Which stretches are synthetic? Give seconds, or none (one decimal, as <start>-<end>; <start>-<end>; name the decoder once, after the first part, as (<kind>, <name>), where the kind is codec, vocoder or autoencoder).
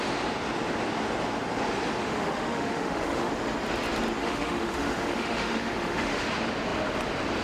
2.0-3.3 (autoencoder, DAC-VAE); 4.2-6.3